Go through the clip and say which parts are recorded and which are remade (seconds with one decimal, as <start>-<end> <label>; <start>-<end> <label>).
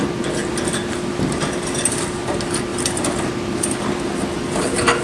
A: 0.0-2.7 recorded; 2.7-4.5 remade; 4.5-5.0 recorded